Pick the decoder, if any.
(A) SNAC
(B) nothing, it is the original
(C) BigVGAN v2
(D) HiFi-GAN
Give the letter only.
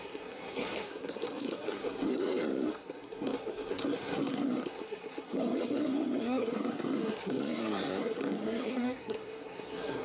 A